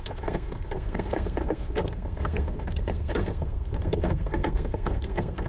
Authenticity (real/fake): fake